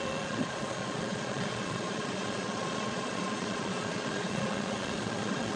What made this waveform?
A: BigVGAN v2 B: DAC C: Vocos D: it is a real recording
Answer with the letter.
C